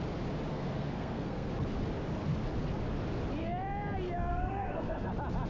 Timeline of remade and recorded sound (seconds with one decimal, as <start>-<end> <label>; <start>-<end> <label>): 0.0-0.5 recorded; 0.5-1.5 remade; 1.5-4.3 recorded; 4.3-5.1 remade; 5.1-5.5 recorded